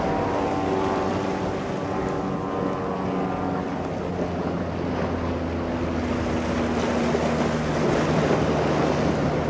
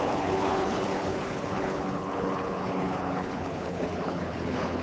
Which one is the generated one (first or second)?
second